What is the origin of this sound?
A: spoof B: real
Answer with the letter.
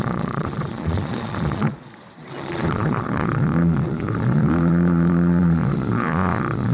A